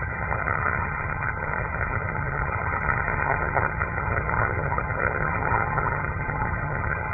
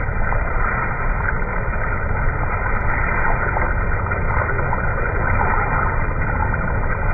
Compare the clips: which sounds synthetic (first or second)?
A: first